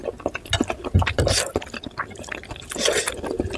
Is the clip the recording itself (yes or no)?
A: yes